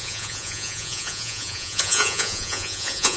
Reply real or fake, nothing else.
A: fake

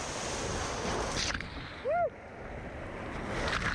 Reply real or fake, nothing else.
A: real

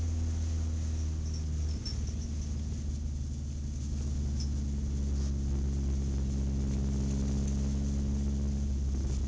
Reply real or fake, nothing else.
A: real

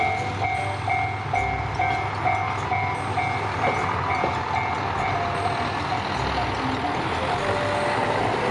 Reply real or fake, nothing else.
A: real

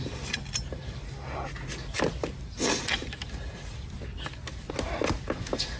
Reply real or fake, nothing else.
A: real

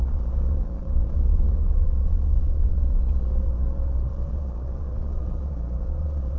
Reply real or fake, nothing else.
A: fake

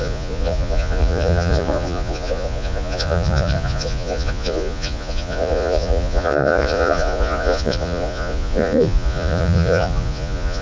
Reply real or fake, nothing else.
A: fake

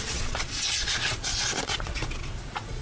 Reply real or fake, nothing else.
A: fake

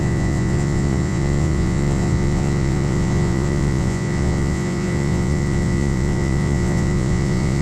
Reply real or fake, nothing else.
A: fake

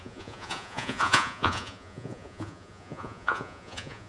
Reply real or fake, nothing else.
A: fake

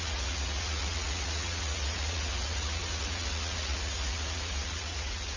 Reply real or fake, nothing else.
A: fake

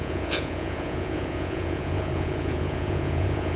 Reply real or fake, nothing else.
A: fake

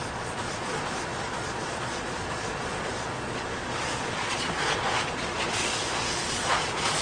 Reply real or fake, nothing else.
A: fake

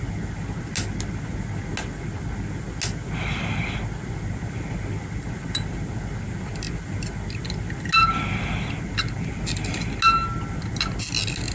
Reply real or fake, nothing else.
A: real